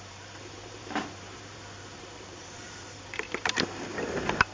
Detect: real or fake fake